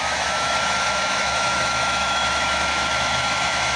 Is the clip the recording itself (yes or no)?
no